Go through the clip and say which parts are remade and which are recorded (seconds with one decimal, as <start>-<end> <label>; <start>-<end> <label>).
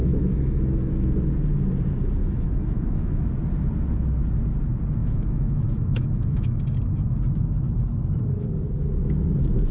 0.0-0.9 remade; 0.9-2.2 recorded; 2.2-3.3 remade; 3.3-5.0 recorded; 5.0-6.6 remade; 6.6-9.7 recorded